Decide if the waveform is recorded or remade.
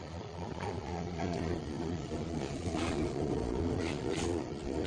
remade